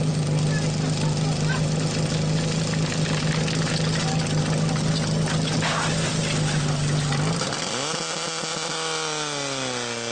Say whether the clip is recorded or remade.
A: recorded